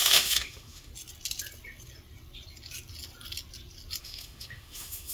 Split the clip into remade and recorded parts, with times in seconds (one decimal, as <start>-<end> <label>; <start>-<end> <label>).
0.0-0.9 remade; 0.9-4.0 recorded; 4.0-5.1 remade

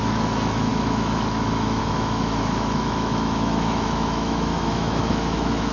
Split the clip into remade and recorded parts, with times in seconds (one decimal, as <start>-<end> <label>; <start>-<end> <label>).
0.0-5.7 remade

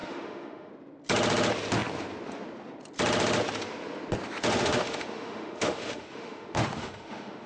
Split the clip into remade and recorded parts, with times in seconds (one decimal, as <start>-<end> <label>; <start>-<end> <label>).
0.0-0.7 remade; 0.7-4.5 recorded; 4.5-7.5 remade

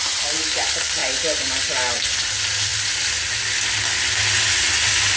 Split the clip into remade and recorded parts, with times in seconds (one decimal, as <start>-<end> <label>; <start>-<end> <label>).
0.0-5.2 recorded

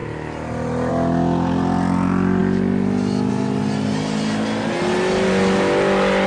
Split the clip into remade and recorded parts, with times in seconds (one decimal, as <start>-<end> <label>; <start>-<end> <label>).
0.0-6.3 recorded

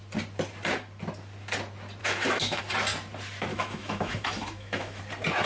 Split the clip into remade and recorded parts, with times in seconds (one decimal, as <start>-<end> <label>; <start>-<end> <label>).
0.0-2.0 recorded; 2.0-2.6 remade; 2.6-3.5 recorded; 3.5-5.0 remade; 5.0-5.5 recorded